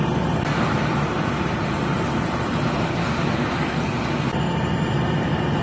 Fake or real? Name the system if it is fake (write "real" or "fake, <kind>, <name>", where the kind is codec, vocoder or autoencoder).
real